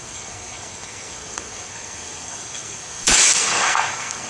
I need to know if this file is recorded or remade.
remade